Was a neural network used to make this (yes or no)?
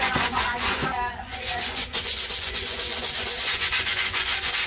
yes